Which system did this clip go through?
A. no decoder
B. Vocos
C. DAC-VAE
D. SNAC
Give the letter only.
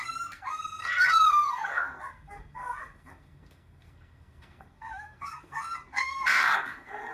D